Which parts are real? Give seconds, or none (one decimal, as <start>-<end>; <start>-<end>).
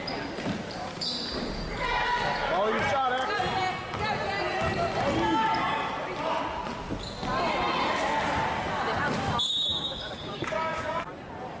0.0-9.7; 10.8-11.6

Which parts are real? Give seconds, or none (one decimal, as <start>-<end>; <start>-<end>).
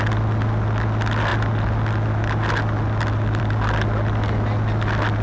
0.0-5.2